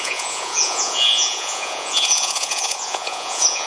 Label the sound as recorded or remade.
remade